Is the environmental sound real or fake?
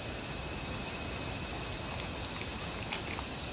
real